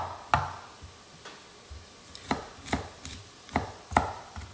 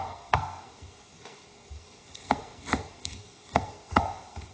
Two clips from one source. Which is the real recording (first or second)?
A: first